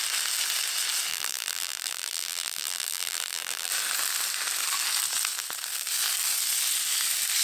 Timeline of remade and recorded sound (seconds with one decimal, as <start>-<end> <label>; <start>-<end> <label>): 0.0-1.1 recorded; 1.1-3.7 remade; 3.7-7.4 recorded